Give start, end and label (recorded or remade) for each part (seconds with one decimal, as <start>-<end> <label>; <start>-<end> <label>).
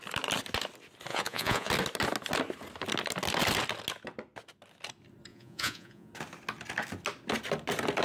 0.0-1.1 recorded; 1.1-1.7 remade; 1.7-5.3 recorded; 5.3-6.1 remade; 6.1-8.0 recorded